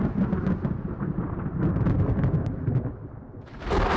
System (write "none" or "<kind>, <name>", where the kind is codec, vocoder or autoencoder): none